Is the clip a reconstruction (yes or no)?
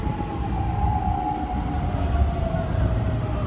no